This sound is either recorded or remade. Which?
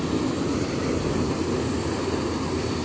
recorded